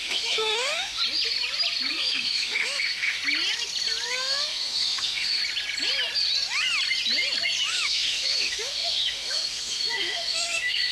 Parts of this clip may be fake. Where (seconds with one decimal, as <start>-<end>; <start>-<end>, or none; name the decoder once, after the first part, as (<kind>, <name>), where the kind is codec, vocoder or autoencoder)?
0.0-1.0 (autoencoder, DAC-VAE); 1.9-3.2; 4.1-5.4; 7.7-10.9